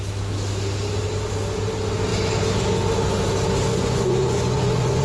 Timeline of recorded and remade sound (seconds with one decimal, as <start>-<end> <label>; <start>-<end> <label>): 0.0-3.7 recorded; 3.7-5.0 remade